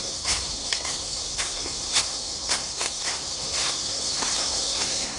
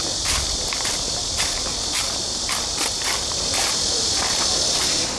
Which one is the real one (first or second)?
second